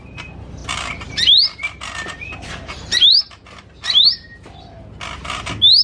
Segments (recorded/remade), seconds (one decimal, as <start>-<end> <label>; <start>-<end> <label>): 0.0-5.8 recorded